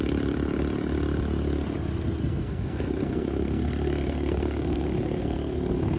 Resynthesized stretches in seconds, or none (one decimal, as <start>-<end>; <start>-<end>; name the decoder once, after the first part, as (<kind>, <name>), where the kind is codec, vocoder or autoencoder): 2.2-6.0 (codec, SNAC)